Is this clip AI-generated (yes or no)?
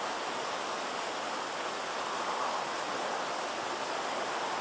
no